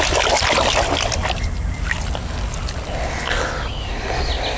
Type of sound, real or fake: real